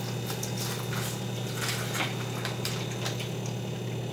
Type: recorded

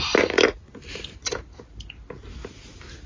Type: recorded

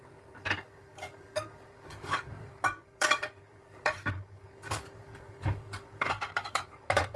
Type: remade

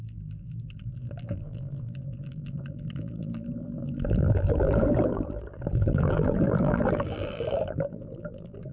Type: remade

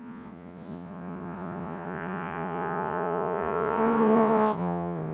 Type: remade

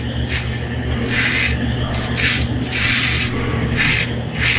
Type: recorded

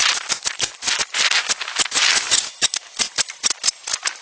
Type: recorded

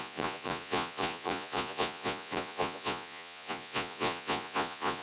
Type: remade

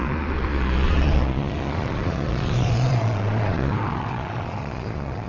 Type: remade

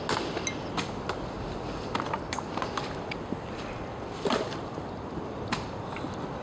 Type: recorded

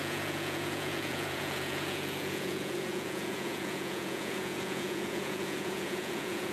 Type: remade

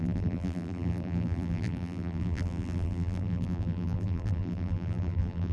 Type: remade